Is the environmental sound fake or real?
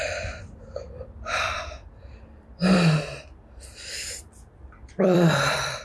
fake